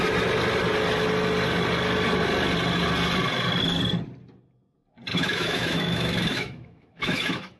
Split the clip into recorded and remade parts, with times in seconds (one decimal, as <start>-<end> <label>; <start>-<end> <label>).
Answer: 0.0-5.1 recorded; 5.1-7.6 remade